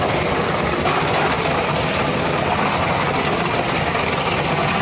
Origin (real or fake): real